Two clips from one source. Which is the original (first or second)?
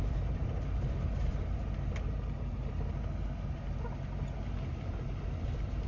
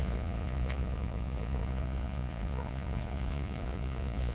first